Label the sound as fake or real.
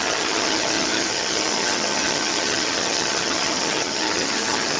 fake